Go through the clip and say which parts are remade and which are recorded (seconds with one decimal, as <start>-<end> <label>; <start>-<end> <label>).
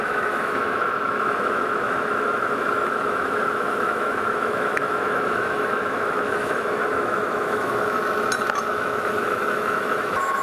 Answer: 0.0-8.0 remade; 8.0-8.7 recorded; 8.7-10.4 remade